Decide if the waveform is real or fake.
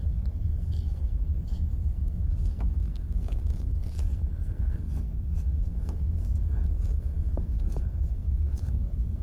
fake